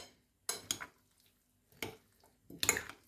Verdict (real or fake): real